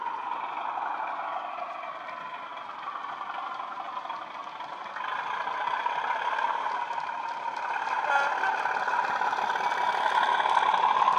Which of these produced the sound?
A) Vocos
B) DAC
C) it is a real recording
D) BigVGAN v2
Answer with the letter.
C